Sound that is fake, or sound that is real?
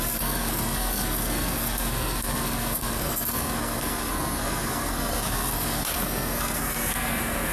fake